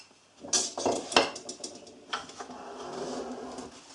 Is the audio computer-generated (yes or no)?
no